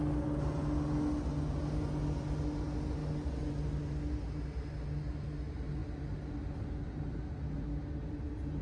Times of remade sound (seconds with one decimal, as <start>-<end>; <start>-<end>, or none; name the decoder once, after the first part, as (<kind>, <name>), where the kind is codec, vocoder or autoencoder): none